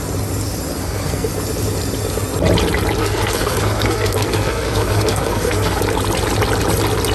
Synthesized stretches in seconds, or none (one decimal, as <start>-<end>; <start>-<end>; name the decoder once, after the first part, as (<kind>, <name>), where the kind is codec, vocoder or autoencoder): 0.8-1.3 (codec, SNAC); 3.0-5.8